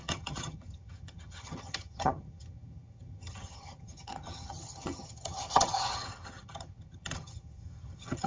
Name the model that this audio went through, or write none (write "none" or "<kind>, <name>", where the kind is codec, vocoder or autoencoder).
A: vocoder, HiFi-GAN